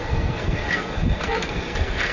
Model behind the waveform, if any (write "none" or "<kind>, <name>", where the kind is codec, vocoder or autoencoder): codec, SNAC